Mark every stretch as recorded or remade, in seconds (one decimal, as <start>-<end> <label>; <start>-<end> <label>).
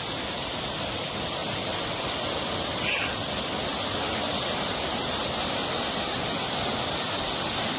0.0-7.8 recorded